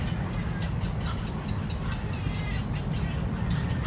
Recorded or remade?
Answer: recorded